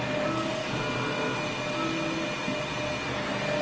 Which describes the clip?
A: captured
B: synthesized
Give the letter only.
A